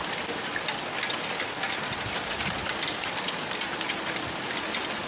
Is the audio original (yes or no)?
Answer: yes